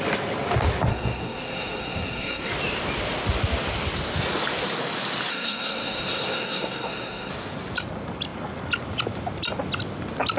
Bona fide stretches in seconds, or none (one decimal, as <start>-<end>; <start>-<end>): 0.0-0.9; 2.5-5.3; 7.3-10.4